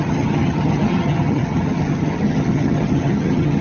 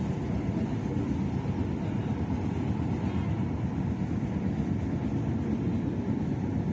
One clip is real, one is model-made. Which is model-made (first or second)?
first